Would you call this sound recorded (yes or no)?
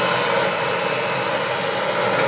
yes